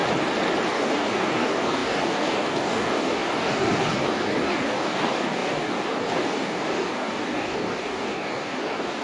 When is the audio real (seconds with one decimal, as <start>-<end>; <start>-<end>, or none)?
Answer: 0.0-0.7